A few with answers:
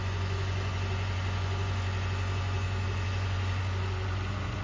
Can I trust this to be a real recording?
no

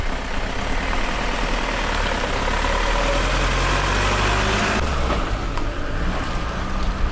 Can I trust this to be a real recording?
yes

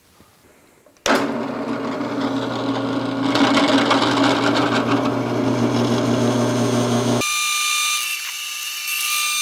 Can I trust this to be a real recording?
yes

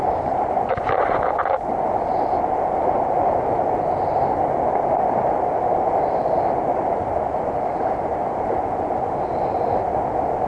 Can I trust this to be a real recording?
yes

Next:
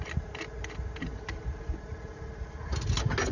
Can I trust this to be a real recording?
yes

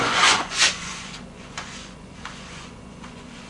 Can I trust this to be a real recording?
no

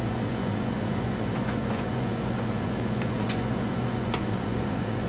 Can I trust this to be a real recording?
no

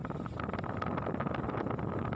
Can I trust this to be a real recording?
yes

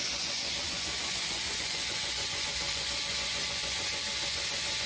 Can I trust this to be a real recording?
no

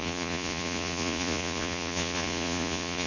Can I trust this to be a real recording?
no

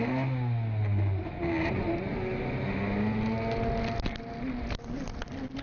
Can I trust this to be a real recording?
yes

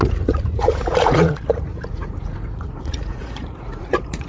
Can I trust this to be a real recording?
no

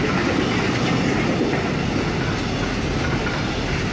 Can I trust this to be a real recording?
yes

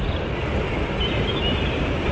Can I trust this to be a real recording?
yes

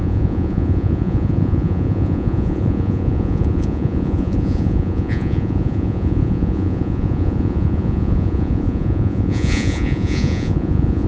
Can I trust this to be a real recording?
no